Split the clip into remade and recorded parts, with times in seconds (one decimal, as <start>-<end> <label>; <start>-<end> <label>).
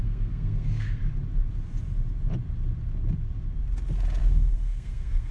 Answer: 0.0-1.0 remade; 1.0-4.2 recorded; 4.2-5.3 remade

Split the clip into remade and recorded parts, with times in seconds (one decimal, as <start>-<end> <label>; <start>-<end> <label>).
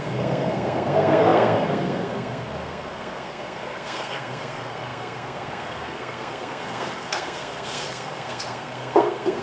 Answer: 0.0-9.4 remade